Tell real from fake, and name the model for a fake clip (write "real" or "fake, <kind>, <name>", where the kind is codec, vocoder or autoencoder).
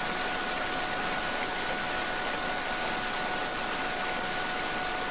real